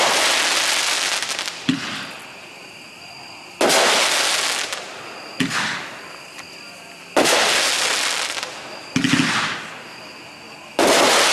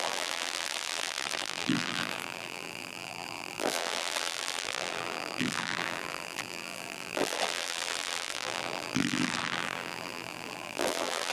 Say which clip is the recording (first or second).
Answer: first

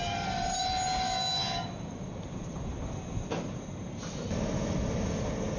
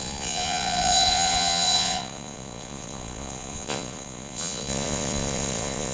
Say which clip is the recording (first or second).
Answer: first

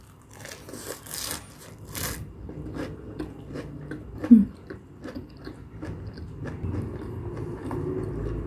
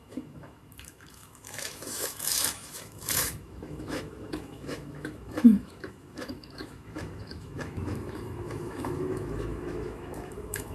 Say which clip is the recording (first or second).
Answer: first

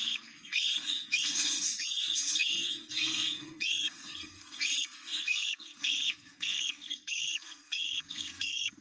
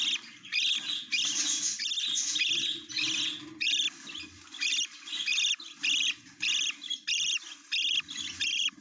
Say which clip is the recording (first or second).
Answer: second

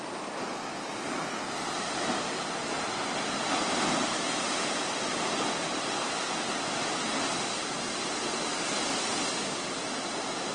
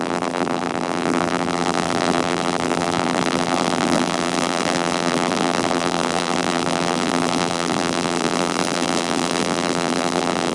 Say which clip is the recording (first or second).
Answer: first